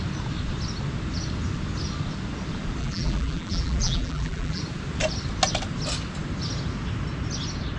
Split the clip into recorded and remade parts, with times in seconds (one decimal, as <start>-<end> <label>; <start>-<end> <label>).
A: 0.0-2.8 recorded; 2.8-4.6 remade; 4.6-7.8 recorded